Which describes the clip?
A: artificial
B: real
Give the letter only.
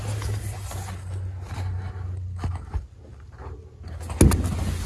B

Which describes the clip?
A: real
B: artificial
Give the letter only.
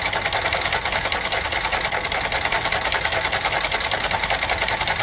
A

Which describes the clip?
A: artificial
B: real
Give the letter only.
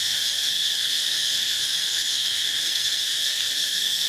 A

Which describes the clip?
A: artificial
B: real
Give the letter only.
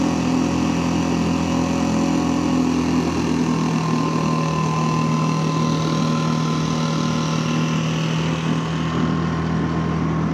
B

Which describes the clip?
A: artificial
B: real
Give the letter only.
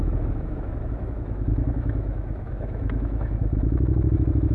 A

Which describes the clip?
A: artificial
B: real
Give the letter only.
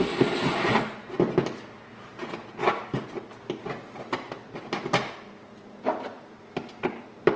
B